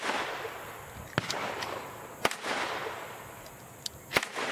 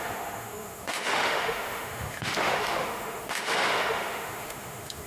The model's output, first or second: second